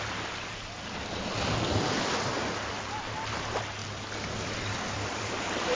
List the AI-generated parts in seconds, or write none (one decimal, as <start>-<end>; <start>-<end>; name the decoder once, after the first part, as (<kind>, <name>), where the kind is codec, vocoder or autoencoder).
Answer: 3.8-5.3 (vocoder, BigVGAN v2)

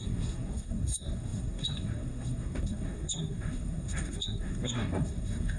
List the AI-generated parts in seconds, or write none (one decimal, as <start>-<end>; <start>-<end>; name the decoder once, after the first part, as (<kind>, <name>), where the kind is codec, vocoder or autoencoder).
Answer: 0.0-5.6 (codec, SNAC)

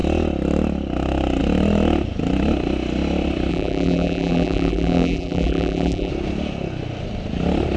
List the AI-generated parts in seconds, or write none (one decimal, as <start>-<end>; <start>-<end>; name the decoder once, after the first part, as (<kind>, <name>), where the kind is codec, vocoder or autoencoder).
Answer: 3.5-6.1 (vocoder, BigVGAN v2)

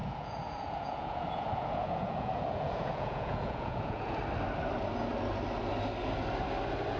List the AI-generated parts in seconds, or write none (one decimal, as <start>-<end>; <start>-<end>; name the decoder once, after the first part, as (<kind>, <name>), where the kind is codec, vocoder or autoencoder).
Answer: 0.0-4.2 (vocoder, Vocos)

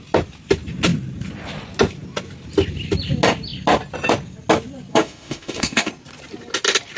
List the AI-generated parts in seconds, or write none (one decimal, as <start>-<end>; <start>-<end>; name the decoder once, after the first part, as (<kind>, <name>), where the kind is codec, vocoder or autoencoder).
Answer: 4.9-5.9 (autoencoder, DAC-VAE)

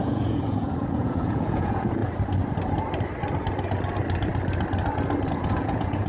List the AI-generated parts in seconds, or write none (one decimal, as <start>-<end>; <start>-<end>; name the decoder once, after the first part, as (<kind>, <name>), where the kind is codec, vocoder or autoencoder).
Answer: 0.0-2.0 (vocoder, Vocos); 5.3-6.1

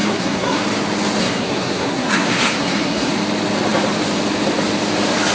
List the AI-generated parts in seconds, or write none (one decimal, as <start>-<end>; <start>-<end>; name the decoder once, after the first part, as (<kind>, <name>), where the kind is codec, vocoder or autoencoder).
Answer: 0.0-0.6 (codec, SNAC); 1.2-3.1